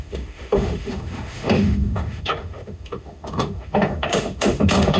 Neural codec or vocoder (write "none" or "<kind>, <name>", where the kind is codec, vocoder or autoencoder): autoencoder, DAC-VAE